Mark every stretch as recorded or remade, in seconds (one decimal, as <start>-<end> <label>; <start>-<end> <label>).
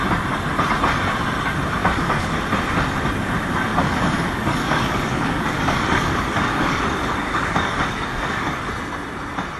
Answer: 0.0-1.8 recorded; 1.8-2.4 remade; 2.4-3.7 recorded; 3.7-8.7 remade; 8.7-9.6 recorded